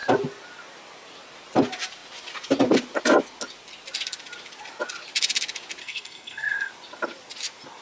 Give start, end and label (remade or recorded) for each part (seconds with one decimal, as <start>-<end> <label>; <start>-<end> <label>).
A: 0.0-5.8 recorded; 5.8-6.7 remade; 6.7-7.8 recorded